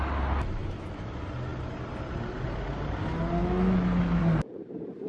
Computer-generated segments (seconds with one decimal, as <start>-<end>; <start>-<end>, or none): 0.6-1.1; 3.4-4.2